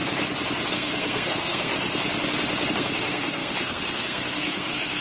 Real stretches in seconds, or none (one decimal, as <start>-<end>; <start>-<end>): 0.0-0.7; 1.7-2.7